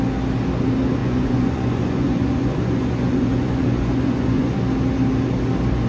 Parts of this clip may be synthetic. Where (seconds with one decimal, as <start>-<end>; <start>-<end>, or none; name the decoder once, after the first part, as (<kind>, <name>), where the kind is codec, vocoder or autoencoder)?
1.0-4.5 (vocoder, Vocos)

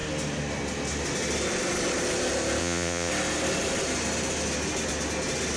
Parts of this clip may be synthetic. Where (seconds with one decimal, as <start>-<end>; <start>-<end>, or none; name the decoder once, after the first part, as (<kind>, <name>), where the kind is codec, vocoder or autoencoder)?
2.6-3.1 (vocoder, Vocos)

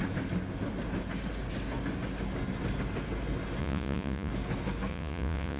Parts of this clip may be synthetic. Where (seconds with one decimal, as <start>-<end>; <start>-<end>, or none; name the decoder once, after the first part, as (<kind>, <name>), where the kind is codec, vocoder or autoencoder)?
3.6-4.3 (vocoder, Vocos); 4.9-5.6

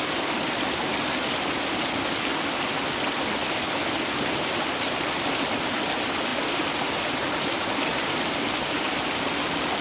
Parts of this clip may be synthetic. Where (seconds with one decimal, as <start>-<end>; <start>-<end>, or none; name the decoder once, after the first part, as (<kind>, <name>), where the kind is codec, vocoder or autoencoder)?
none

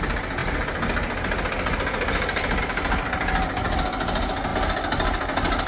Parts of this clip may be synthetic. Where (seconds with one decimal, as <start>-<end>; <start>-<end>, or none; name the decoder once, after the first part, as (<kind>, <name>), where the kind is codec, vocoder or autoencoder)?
none

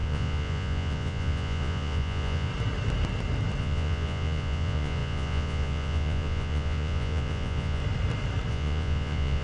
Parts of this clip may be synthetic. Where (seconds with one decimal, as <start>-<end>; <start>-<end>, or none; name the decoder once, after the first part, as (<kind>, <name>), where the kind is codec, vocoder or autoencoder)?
0.0-2.5 (vocoder, Vocos); 3.6-7.8; 8.5-9.4